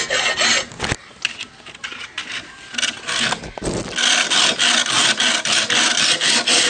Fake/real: real